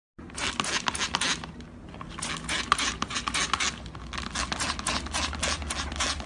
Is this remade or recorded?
recorded